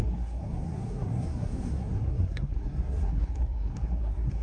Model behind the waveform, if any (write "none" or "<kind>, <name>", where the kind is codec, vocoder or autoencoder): codec, SNAC